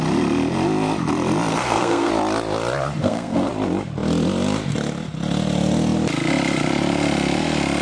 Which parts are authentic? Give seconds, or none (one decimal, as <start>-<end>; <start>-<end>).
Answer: 0.0-1.5; 2.1-3.0; 3.5-7.8